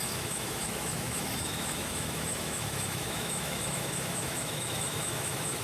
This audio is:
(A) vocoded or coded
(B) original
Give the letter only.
A